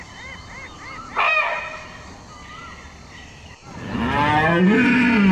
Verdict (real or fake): real